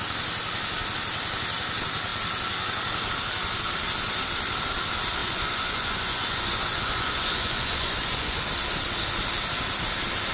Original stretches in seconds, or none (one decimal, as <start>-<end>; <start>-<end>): 0.0-5.2; 8.4-10.3